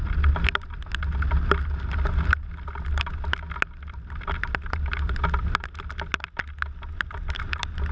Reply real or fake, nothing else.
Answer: real